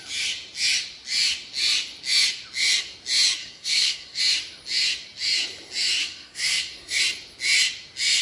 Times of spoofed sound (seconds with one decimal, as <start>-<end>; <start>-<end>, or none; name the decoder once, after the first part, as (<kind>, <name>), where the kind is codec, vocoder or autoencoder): 3.4-4.2 (codec, SNAC); 6.0-7.0